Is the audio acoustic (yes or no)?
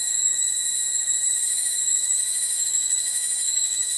no